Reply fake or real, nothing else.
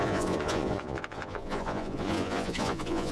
fake